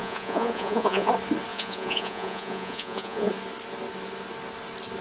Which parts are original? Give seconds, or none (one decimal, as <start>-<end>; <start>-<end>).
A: 1.1-1.5; 3.3-5.0